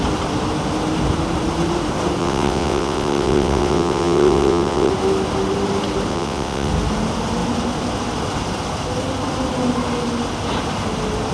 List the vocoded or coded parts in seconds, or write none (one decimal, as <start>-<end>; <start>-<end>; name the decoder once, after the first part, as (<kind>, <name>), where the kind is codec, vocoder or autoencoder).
2.2-4.9 (vocoder, WaveNeXt); 6.1-6.7